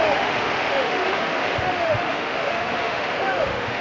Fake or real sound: fake